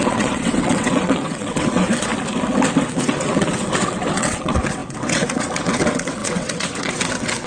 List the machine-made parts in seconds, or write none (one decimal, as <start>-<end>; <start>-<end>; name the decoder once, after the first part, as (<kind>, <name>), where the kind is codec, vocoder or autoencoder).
0.0-2.1 (vocoder, WaveNeXt); 2.8-7.5